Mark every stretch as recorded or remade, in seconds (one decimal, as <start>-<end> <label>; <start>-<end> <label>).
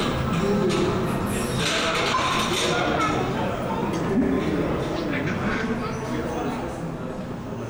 0.0-7.7 recorded